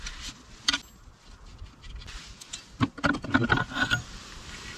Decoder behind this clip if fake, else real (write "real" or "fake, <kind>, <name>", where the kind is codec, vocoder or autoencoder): real